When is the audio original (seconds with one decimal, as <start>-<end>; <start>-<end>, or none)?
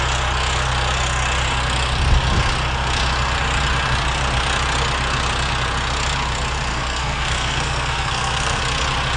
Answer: 0.0-6.7; 8.6-9.2